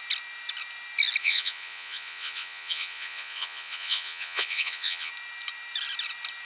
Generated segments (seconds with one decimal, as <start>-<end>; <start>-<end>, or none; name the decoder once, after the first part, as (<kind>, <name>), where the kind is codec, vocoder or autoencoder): 1.2-5.1 (vocoder, Vocos)